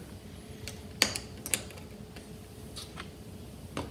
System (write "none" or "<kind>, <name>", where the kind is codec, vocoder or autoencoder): none